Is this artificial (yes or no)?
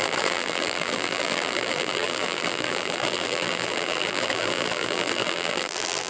yes